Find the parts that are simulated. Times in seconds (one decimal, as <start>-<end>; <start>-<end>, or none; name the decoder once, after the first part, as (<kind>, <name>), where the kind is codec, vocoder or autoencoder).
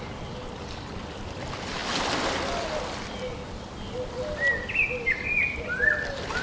none